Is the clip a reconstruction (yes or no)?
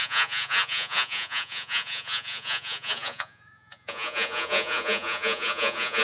yes